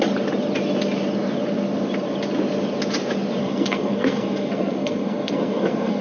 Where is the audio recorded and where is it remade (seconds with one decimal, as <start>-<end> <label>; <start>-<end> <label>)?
0.0-3.4 recorded; 3.4-6.0 remade